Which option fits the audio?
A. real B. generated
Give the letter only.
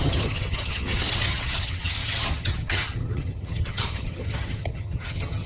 B